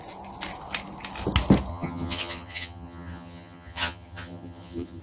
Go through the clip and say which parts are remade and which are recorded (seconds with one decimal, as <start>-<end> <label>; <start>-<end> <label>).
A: 0.0-1.7 recorded; 1.7-5.0 remade